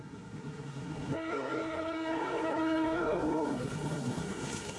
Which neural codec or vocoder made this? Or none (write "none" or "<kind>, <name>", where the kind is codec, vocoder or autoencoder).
codec, SNAC